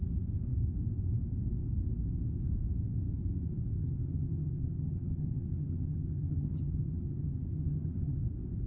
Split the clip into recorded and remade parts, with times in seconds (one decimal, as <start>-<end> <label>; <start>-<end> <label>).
0.0-3.8 recorded; 3.8-8.2 remade; 8.2-8.7 recorded